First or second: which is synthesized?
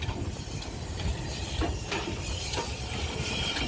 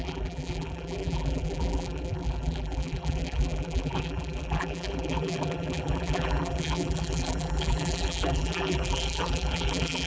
second